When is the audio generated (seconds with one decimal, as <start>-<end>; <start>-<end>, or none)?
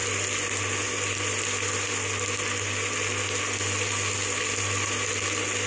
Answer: none